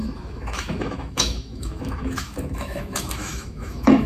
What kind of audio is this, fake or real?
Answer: fake